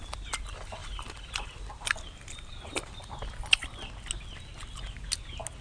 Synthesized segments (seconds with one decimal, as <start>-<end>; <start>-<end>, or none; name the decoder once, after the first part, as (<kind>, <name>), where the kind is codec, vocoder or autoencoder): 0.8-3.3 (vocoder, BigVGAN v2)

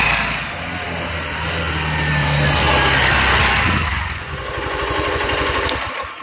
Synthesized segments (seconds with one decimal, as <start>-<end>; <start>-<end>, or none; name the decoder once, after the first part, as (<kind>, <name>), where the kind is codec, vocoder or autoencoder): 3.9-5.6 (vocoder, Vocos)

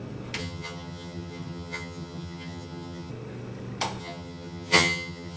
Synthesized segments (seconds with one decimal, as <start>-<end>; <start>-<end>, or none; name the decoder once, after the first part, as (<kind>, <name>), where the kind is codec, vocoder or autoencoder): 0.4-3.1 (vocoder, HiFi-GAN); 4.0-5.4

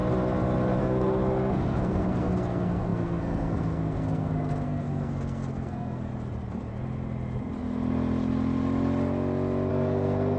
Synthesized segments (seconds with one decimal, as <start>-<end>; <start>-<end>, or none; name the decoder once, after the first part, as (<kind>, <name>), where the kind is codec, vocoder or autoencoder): 0.8-6.1 (codec, SNAC); 9.7-10.4

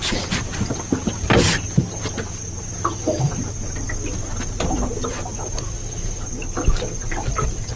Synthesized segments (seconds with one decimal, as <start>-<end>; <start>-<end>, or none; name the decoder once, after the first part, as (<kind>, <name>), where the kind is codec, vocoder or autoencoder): none

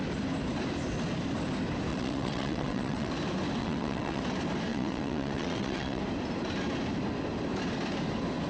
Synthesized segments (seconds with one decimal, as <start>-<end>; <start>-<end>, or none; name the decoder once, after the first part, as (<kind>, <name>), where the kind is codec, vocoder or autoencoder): 1.9-3.1 (vocoder, WaveNeXt); 3.6-4.2; 4.7-6.0

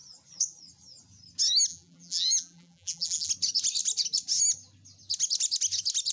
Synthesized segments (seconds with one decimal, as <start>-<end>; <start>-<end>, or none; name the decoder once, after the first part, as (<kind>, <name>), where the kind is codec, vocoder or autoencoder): 1.7-3.3 (vocoder, BigVGAN v2)